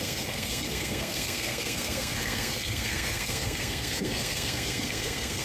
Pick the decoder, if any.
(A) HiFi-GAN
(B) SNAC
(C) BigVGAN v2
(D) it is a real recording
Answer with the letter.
B